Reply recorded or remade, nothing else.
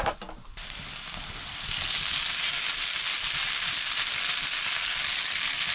recorded